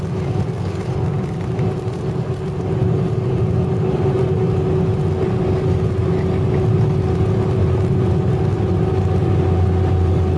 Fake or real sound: real